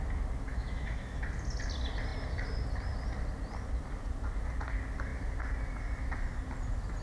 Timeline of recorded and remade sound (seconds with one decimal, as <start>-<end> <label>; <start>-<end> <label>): 0.0-0.5 recorded; 0.5-1.2 remade; 1.2-7.0 recorded